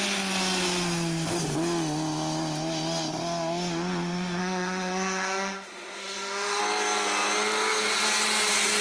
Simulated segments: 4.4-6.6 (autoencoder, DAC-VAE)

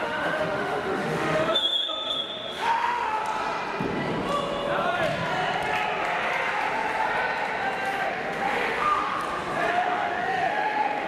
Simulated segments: 0.0-3.2 (autoencoder, DAC-VAE); 8.1-9.2; 9.7-11.1

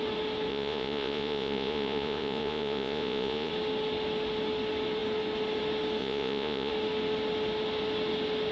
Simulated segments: 0.5-3.5 (vocoder, Vocos); 6.0-6.7

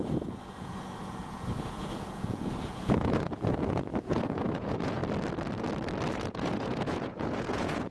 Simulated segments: 0.0-5.0 (vocoder, Vocos); 6.1-7.9

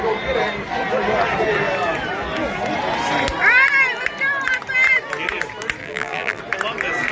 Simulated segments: 5.8-6.4 (vocoder, BigVGAN v2)

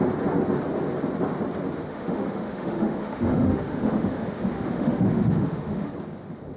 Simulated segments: 1.9-5.9 (autoencoder, DAC-VAE)

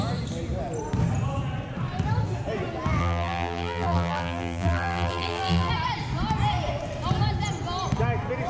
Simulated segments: 3.0-5.7 (vocoder, BigVGAN v2)